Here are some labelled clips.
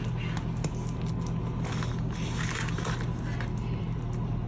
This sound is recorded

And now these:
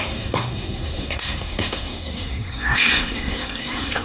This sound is remade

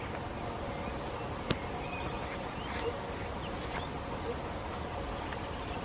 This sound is recorded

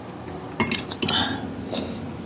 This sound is recorded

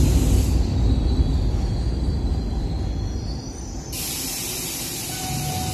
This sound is recorded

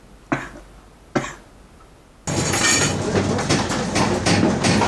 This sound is recorded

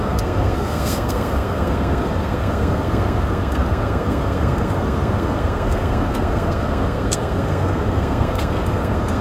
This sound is remade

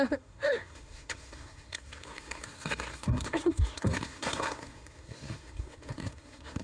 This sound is remade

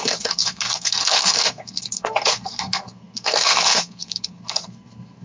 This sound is remade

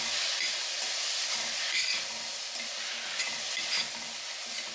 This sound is recorded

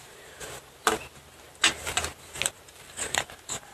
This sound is recorded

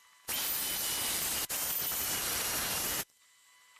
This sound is recorded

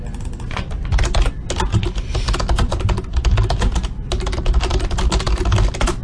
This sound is recorded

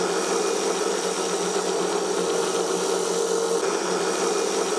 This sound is recorded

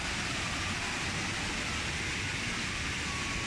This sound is recorded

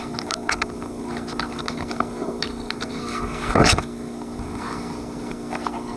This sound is remade